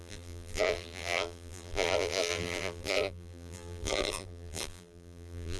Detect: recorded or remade remade